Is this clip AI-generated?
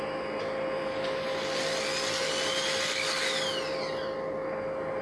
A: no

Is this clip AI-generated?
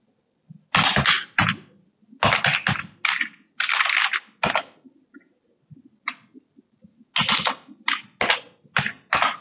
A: no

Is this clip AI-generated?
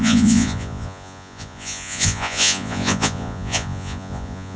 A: yes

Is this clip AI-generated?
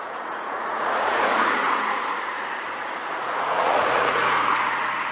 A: yes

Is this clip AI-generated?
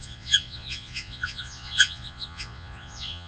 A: yes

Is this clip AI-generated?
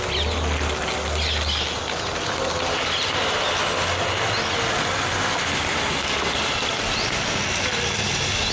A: no